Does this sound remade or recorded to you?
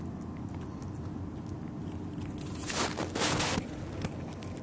recorded